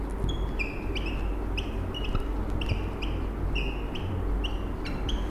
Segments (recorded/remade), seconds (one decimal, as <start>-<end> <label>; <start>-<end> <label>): 0.0-5.3 recorded